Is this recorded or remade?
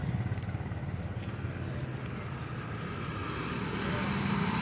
recorded